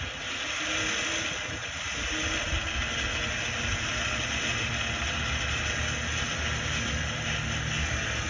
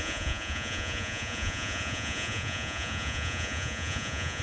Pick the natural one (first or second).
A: first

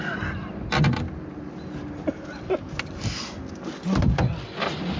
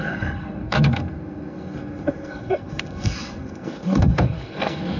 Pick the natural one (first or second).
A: first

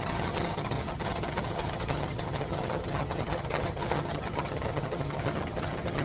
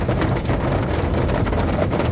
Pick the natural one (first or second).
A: second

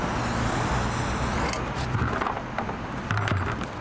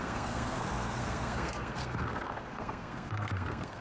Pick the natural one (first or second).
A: first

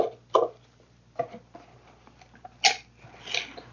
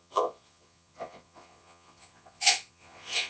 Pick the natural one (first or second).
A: first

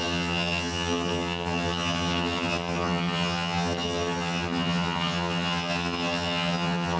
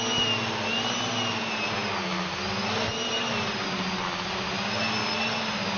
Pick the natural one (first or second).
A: second